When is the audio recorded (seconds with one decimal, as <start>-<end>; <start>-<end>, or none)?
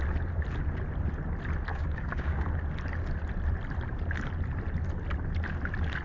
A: 0.0-1.7; 2.5-6.0